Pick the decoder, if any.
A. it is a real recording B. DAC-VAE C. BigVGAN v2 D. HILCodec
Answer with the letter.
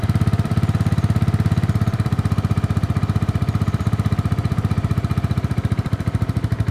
C